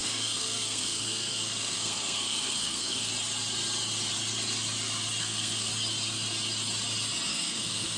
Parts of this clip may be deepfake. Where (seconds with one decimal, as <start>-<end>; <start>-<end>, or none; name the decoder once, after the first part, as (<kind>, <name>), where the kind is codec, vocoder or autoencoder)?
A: 0.0-3.1 (codec, SNAC); 5.2-5.7; 7.3-8.0